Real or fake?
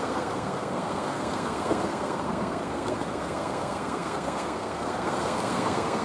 fake